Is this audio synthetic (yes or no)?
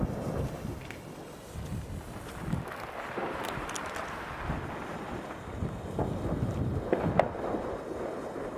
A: no